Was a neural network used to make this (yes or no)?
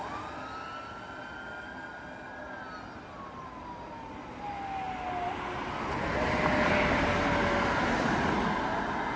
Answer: no